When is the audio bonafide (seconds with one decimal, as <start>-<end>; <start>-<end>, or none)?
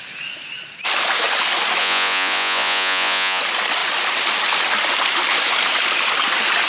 0.0-1.8; 3.4-6.7